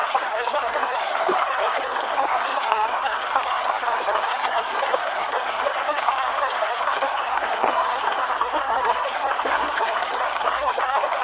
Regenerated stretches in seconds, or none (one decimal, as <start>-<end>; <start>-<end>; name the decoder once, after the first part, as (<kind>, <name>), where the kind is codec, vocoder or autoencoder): 0.0-11.2 (codec, SNAC)

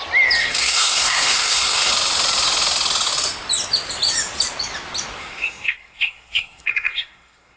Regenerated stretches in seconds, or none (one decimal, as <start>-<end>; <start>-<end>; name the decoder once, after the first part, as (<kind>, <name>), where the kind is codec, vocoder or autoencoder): 0.4-1.9 (codec, SNAC); 5.2-7.6

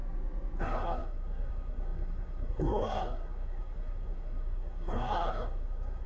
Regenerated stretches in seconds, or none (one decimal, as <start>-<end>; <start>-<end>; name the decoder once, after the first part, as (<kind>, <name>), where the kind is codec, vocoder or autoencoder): 0.6-6.1 (codec, SNAC)